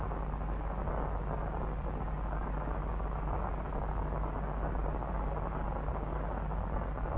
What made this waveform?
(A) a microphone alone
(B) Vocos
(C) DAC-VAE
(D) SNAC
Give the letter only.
A